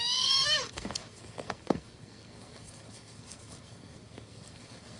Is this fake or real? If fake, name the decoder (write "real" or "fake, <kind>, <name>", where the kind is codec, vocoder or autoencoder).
fake, codec, SNAC